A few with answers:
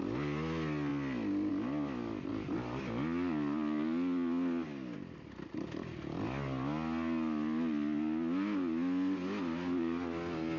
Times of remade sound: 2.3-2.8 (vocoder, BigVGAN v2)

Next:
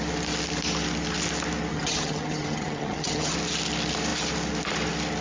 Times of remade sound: 1.7-3.3 (vocoder, HiFi-GAN)

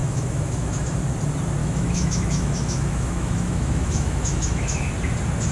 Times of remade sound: 0.0-1.0 (autoencoder, DAC-VAE); 1.6-4.9

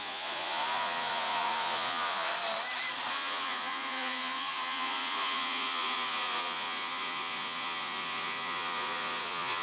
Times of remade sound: 0.0-2.3 (vocoder, Vocos); 3.1-9.6

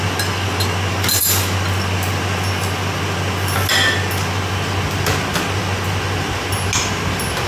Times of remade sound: none

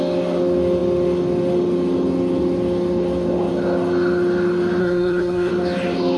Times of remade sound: 4.8-5.5 (codec, SNAC)